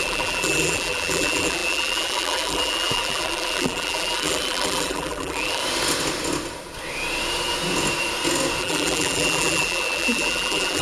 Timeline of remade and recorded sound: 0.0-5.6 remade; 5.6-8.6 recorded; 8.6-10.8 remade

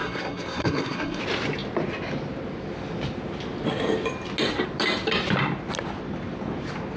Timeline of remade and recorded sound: 0.0-1.2 remade; 1.2-7.0 recorded